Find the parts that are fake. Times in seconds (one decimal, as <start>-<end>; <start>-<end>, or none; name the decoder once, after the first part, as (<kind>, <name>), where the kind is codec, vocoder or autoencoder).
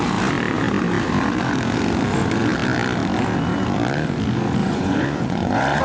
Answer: 4.6-5.8 (vocoder, Vocos)